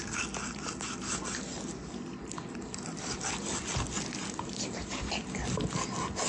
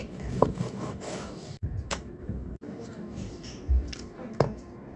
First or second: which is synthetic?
second